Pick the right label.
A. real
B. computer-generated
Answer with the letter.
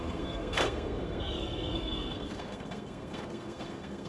B